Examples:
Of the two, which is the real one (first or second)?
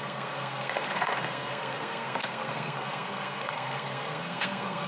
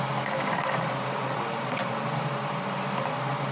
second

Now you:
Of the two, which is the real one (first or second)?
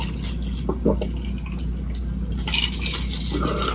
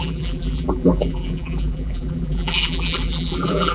first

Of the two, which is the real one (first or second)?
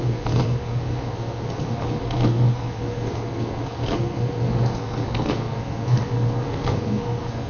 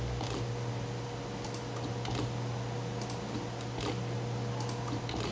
second